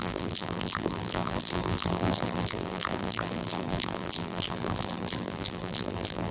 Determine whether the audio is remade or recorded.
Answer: remade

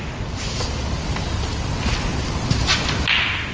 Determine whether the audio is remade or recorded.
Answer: recorded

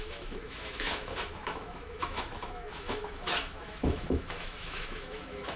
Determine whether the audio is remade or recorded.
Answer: remade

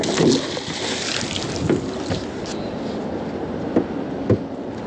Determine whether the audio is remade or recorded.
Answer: recorded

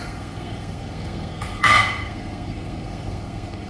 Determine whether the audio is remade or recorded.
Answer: remade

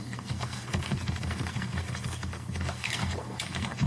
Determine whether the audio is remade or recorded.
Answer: remade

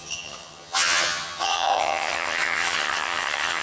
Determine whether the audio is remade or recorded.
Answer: remade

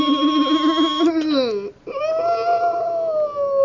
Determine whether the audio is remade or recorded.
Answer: recorded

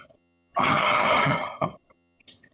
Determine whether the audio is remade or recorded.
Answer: remade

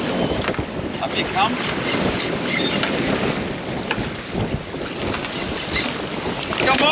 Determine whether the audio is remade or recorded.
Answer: recorded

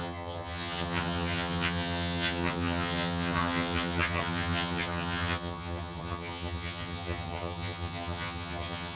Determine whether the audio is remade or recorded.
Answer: remade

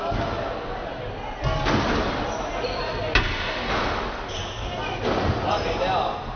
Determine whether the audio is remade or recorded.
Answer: recorded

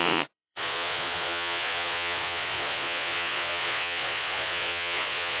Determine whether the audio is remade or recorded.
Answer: remade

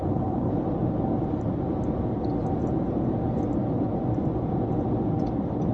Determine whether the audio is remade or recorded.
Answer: recorded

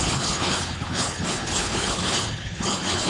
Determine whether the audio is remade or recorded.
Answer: remade